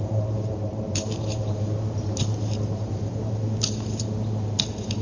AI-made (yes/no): yes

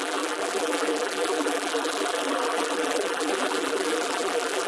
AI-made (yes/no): yes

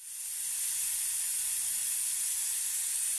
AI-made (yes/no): no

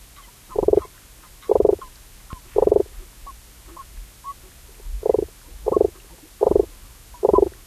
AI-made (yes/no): no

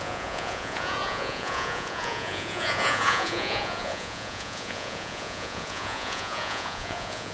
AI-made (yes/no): yes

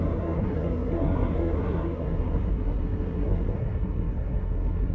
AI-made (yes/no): yes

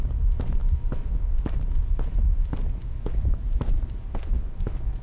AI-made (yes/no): no